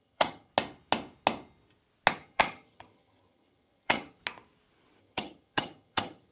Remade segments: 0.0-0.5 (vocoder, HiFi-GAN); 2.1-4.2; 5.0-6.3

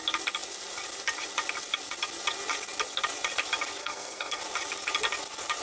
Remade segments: 3.8-4.4 (codec, SNAC)

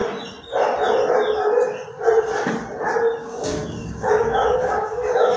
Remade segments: 3.2-5.4 (codec, DAC)

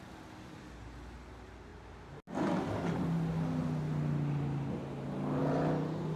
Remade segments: none

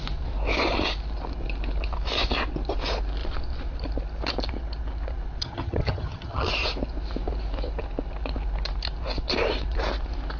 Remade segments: 5.4-6.5 (vocoder, HiFi-GAN)

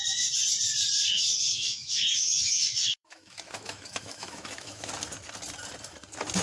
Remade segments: 1.1-4.9 (autoencoder, DAC-VAE)

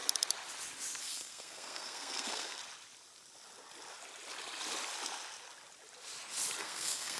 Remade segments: 1.0-2.6 (codec, SNAC); 6.6-7.2